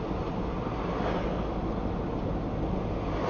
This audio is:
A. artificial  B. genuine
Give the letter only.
B